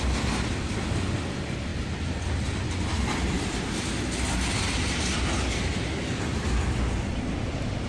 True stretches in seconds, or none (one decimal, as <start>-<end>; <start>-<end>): 0.0-7.9